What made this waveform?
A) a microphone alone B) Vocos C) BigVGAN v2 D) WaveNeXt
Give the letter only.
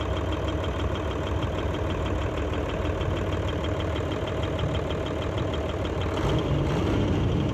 A